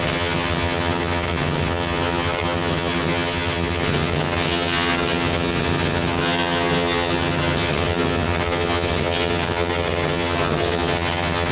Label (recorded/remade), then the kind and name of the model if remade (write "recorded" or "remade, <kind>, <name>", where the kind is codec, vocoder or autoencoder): remade, vocoder, HiFi-GAN